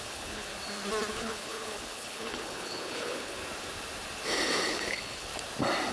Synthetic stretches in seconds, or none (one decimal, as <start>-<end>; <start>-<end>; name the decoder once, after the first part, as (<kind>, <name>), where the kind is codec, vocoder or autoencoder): 0.0-0.5 (codec, HILCodec); 1.1-3.4; 4.7-5.3